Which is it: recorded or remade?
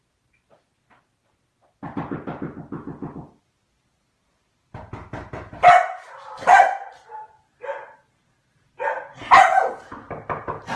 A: recorded